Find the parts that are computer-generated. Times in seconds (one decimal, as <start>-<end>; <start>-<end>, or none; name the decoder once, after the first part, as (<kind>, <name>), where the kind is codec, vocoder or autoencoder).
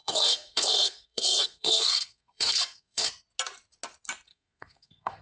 0.0-3.1 (codec, SNAC); 4.3-5.2